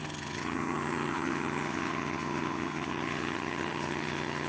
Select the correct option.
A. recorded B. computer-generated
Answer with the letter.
B